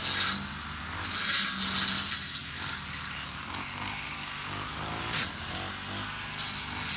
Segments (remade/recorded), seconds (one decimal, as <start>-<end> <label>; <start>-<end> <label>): 0.0-2.3 recorded; 2.3-5.0 remade; 5.0-7.0 recorded